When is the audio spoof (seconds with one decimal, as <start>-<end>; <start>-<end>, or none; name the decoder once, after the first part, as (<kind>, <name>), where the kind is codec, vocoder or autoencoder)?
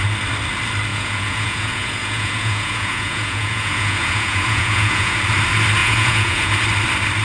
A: 0.9-5.2 (vocoder, Vocos); 5.8-6.5